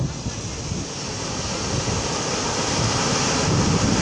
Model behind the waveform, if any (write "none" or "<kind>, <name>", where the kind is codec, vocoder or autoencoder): none